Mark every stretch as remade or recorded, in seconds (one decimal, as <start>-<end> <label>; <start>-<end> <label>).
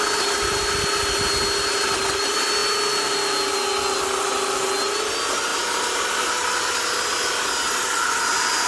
0.0-8.7 recorded